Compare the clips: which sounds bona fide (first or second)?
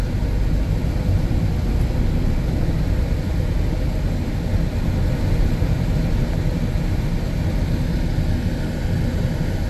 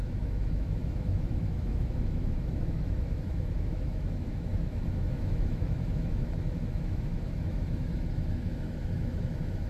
first